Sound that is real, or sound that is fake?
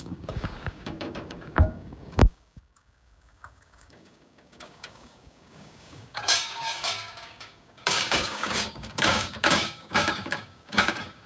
fake